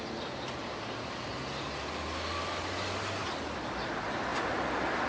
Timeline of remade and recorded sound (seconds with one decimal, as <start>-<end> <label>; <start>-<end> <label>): 0.0-5.1 recorded